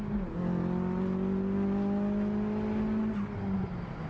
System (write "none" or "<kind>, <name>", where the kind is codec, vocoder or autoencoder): none